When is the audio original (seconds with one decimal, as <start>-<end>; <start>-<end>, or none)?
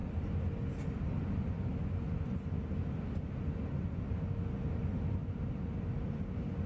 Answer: 0.0-6.7